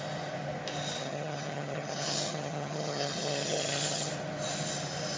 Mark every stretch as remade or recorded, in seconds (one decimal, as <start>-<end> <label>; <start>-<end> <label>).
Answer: 0.0-1.0 recorded; 1.0-4.1 remade; 4.1-5.2 recorded